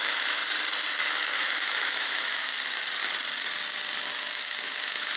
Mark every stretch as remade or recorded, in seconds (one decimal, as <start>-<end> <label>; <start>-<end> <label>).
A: 0.0-0.4 remade; 0.4-1.0 recorded; 1.0-2.5 remade; 2.5-4.1 recorded; 4.1-5.2 remade

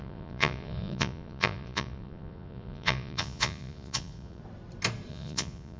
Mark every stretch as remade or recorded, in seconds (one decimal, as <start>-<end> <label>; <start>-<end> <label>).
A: 0.0-4.4 remade; 4.4-5.1 recorded; 5.1-5.8 remade

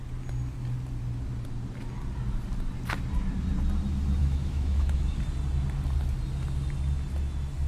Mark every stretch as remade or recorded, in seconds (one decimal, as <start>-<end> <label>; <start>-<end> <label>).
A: 0.0-4.2 recorded; 4.2-5.2 remade; 5.2-7.7 recorded

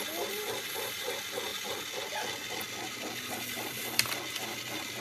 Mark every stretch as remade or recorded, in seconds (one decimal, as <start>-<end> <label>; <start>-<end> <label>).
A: 0.0-5.0 recorded

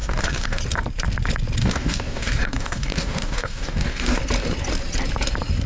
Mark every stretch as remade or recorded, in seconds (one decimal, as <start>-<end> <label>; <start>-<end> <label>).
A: 0.0-0.6 remade; 0.6-1.6 recorded; 1.6-4.2 remade; 4.2-5.7 recorded